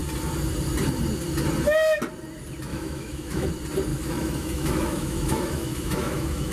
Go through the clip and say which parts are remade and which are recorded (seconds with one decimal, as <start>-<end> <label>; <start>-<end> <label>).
0.0-2.7 recorded; 2.7-3.5 remade; 3.5-3.9 recorded; 3.9-6.5 remade